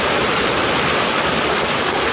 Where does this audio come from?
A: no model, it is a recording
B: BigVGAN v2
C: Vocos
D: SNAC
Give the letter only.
A